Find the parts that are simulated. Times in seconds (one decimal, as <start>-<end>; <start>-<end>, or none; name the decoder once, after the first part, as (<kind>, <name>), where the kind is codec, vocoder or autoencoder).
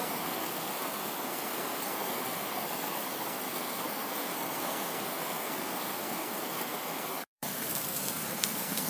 0.0-8.9 (codec, SNAC)